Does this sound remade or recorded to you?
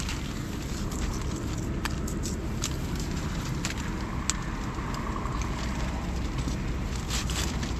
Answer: recorded